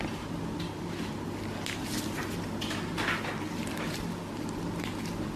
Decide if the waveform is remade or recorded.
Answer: recorded